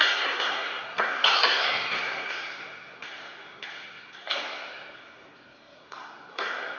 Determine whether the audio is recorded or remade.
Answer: remade